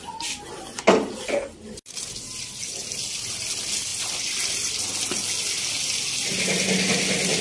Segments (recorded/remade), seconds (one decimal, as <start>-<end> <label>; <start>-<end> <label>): 0.0-2.6 recorded; 2.6-3.4 remade; 3.4-3.9 recorded; 3.9-4.7 remade; 4.7-7.4 recorded